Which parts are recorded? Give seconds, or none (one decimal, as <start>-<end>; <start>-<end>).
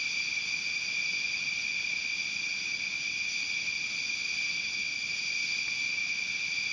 0.0-6.7